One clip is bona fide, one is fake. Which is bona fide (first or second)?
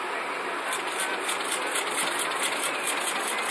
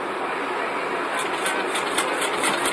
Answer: second